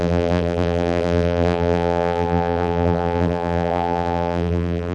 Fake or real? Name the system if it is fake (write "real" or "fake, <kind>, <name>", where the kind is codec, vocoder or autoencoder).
fake, vocoder, BigVGAN v2